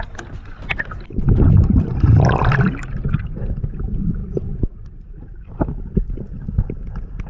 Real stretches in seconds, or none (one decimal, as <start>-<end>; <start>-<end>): 0.0-4.2; 4.9-7.3